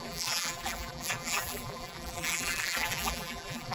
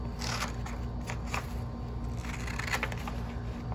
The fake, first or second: first